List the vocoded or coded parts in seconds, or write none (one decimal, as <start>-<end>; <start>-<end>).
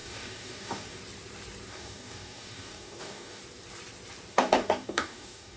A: 0.0-1.0; 1.7-3.4; 4.3-5.6